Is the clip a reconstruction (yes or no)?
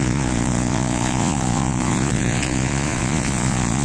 yes